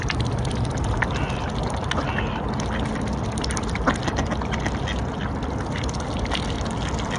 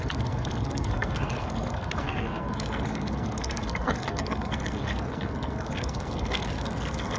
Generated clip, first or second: second